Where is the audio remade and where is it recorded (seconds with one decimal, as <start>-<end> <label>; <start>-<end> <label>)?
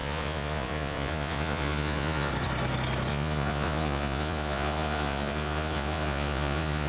0.0-2.3 remade; 2.3-3.1 recorded; 3.1-6.9 remade